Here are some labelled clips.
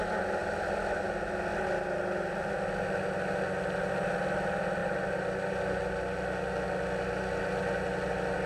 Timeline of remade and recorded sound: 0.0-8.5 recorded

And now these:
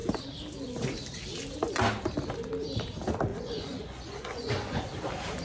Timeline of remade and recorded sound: 0.0-3.3 recorded; 3.3-4.8 remade; 4.8-5.4 recorded

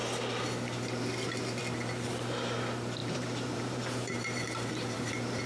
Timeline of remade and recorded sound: 0.0-3.0 recorded; 3.0-5.1 remade; 5.1-5.5 recorded

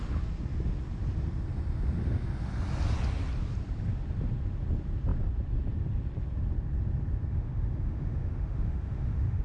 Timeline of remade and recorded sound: 0.0-7.3 recorded; 7.3-9.4 remade

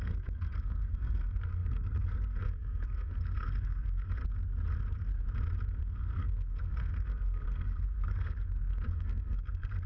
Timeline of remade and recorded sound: 0.0-4.2 remade; 4.2-5.8 recorded; 5.8-9.9 remade

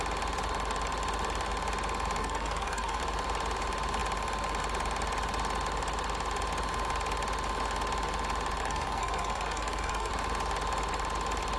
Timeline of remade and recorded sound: 0.0-2.2 recorded; 2.2-3.0 remade; 3.0-8.6 recorded; 8.6-10.1 remade; 10.1-11.6 recorded

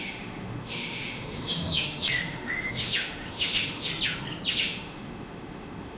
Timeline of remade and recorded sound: 0.0-3.9 remade; 3.9-4.5 recorded; 4.5-6.0 remade

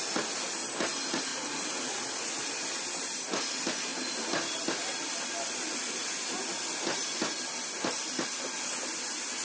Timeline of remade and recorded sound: 0.0-1.3 recorded; 1.3-2.4 remade; 2.4-9.4 recorded